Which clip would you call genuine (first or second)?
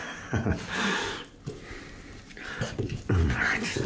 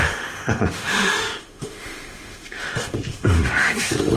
first